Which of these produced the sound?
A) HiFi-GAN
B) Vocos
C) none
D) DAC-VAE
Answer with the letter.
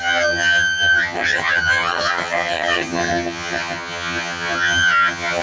A